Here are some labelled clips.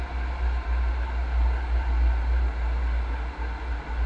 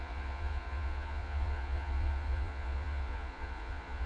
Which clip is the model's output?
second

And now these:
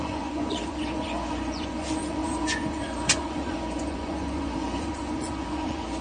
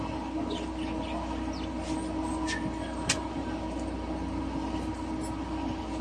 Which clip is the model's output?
first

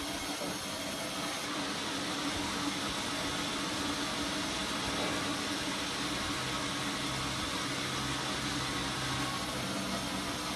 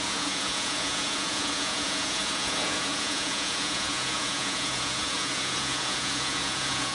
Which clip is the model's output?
second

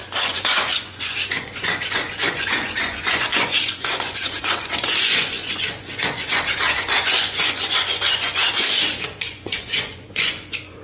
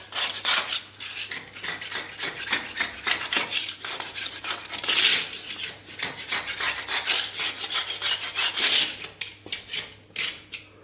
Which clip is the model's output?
first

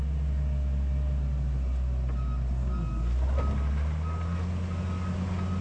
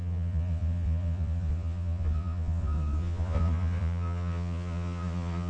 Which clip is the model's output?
second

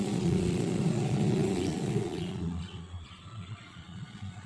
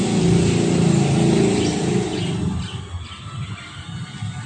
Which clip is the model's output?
first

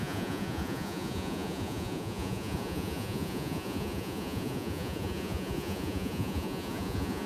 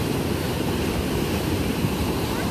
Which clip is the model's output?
first